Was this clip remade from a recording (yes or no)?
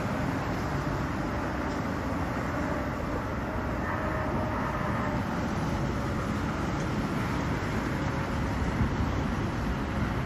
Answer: no